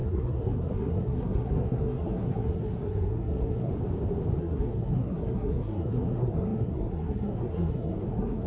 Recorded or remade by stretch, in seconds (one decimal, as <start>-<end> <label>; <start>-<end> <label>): 0.0-3.7 remade; 3.7-4.4 recorded; 4.4-8.5 remade